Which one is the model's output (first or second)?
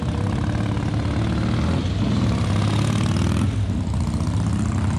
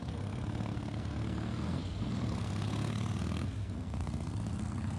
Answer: second